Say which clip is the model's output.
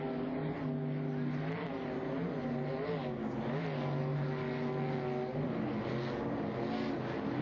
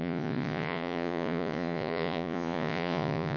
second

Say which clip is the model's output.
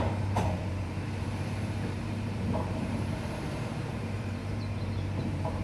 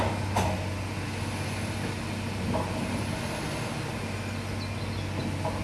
first